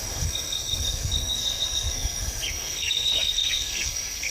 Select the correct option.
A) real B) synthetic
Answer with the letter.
B